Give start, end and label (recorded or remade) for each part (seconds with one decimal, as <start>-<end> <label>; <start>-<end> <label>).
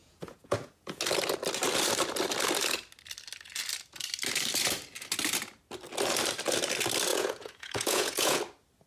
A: 0.0-1.0 remade; 1.0-7.1 recorded; 7.1-8.4 remade; 8.4-8.9 recorded